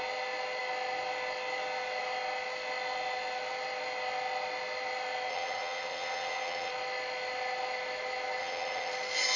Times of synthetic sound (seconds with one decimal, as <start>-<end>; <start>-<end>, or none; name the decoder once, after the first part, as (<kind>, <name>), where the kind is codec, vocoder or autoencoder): 5.3-6.7 (vocoder, HiFi-GAN); 8.4-8.9